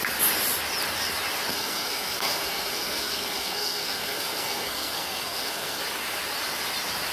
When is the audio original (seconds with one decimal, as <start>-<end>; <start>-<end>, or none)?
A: 0.0-1.5; 5.8-7.1